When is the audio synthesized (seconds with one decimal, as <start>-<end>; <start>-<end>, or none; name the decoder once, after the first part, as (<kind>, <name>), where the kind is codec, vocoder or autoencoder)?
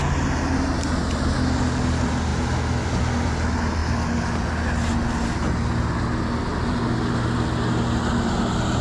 none